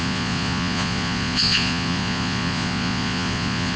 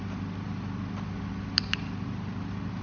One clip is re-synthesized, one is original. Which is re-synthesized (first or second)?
first